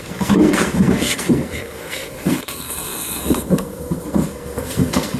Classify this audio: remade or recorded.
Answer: remade